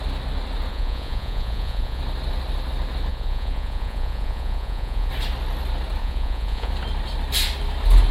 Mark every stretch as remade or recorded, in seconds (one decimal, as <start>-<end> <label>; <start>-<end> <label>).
0.0-0.7 recorded; 0.7-2.0 remade; 2.0-3.1 recorded; 3.1-5.1 remade; 5.1-6.0 recorded; 6.0-6.7 remade; 6.7-8.1 recorded